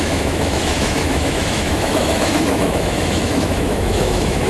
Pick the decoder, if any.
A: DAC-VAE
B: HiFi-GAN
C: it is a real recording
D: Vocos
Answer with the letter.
A